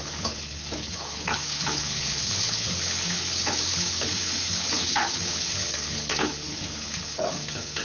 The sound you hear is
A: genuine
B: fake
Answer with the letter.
B